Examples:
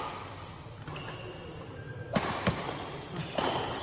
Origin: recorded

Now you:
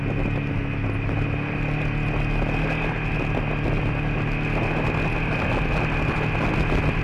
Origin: recorded